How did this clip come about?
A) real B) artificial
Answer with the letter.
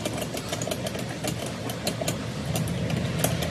A